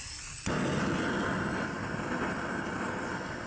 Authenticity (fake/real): real